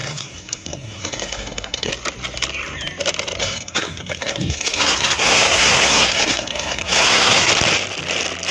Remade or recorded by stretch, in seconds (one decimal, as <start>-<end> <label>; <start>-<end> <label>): 0.0-1.9 remade; 1.9-3.4 recorded; 3.4-7.5 remade; 7.5-8.5 recorded